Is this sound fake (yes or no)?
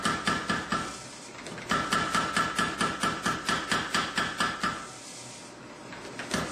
no